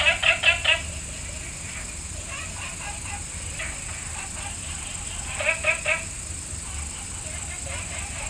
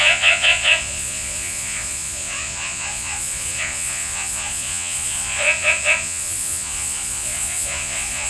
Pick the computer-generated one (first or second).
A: second